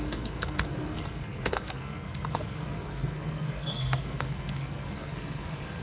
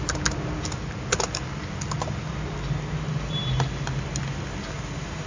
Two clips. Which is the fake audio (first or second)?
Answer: first